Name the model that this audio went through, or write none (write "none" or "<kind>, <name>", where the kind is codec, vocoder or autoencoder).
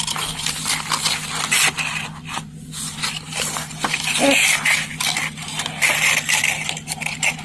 none